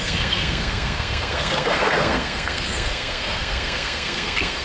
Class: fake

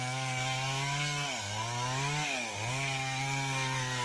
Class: fake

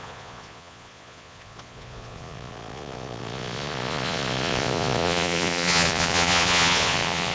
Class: fake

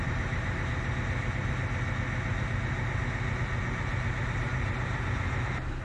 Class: real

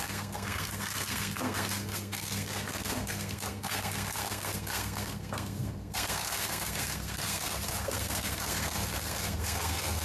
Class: fake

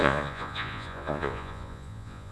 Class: fake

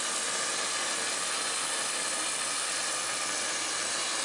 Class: real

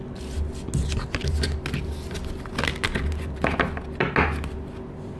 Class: real